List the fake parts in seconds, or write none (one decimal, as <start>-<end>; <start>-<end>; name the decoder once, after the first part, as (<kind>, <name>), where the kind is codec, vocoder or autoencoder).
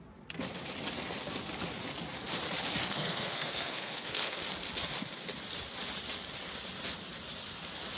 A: 2.8-4.4 (codec, SNAC)